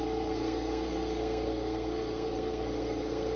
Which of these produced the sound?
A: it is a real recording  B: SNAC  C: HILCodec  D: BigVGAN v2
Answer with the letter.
B